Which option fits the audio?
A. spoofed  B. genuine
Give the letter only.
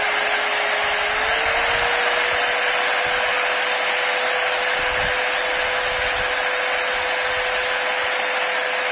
B